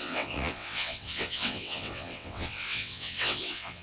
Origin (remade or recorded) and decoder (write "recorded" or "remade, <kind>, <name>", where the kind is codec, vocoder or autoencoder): remade, vocoder, WaveNeXt